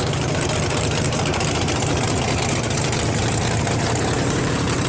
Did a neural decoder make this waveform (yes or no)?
yes